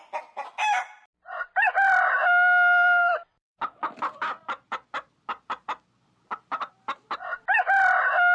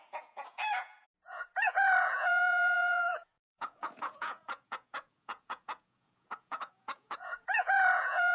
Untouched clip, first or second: first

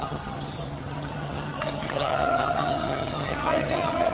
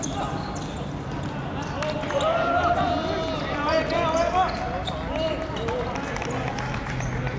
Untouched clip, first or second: second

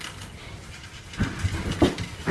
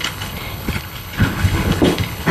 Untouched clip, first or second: first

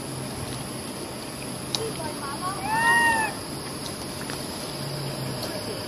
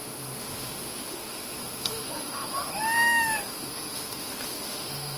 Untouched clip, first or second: first